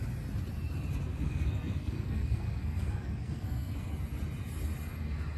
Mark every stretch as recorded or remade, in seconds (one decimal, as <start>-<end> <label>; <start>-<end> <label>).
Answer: 0.0-1.1 recorded; 1.1-3.9 remade; 3.9-5.4 recorded